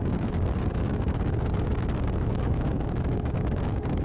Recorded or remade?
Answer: remade